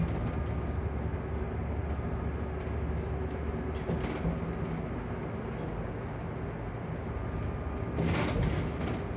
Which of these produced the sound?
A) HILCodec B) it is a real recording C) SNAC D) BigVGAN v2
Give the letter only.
B